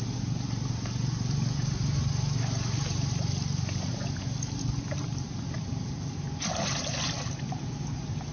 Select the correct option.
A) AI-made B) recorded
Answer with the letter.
B